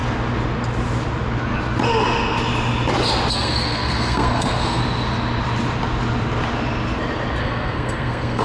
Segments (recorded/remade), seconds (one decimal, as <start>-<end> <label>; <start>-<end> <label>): 0.0-3.3 recorded; 3.3-4.8 remade; 4.8-7.4 recorded; 7.4-8.4 remade